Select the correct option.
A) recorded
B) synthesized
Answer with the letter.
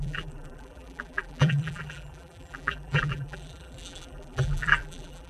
B